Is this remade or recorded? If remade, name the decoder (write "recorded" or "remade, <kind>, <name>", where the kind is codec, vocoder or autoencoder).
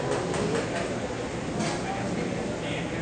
recorded